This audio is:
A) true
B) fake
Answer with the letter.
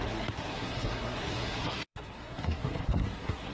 B